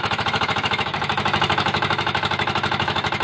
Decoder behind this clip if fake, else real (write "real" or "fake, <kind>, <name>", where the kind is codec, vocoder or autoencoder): fake, autoencoder, DAC-VAE